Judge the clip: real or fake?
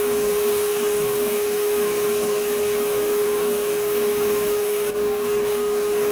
fake